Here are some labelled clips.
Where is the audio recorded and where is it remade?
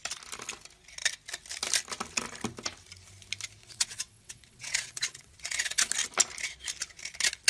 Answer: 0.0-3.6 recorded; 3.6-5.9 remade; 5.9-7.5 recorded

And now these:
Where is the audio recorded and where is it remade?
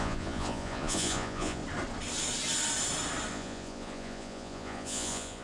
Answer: 0.0-1.6 remade; 1.6-3.3 recorded; 3.3-5.4 remade